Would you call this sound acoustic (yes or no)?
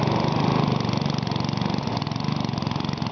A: yes